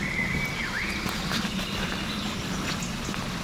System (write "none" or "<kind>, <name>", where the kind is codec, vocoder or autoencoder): none